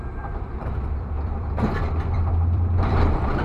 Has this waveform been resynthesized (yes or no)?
yes